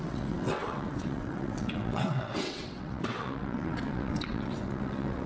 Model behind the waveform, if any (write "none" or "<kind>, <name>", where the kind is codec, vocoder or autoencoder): vocoder, WaveNeXt